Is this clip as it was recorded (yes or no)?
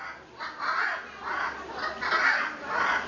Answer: yes